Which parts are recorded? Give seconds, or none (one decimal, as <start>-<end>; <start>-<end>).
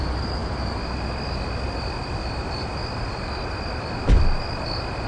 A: 0.0-5.1